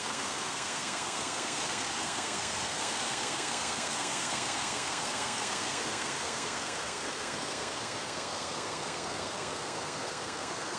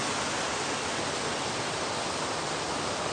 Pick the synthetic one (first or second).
first